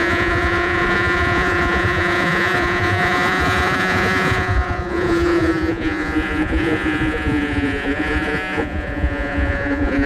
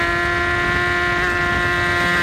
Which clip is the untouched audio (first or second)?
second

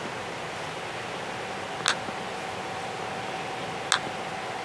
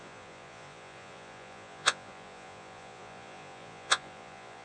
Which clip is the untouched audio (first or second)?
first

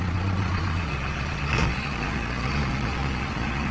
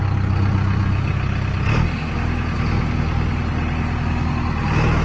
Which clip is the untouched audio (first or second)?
second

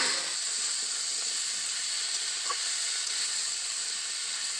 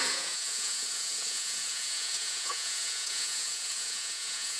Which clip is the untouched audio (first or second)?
first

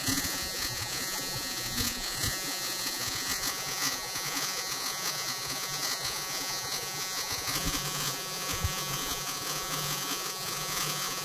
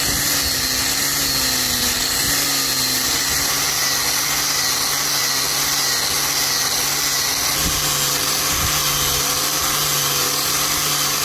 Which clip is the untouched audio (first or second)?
second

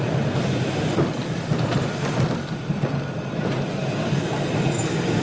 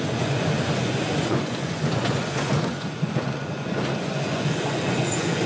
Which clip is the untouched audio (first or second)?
first